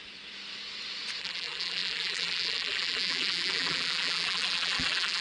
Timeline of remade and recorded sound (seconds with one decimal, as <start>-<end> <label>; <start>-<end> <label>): 0.0-1.2 recorded; 1.2-5.2 remade